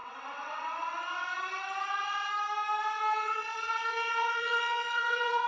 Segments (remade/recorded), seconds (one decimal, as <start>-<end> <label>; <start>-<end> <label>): 0.0-2.3 remade; 2.3-2.8 recorded; 2.8-5.5 remade